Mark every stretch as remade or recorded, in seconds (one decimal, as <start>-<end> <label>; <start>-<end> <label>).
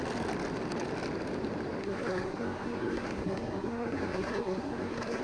0.0-1.8 recorded; 1.8-5.2 remade